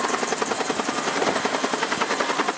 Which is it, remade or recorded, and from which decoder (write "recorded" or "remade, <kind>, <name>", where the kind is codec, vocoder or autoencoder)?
recorded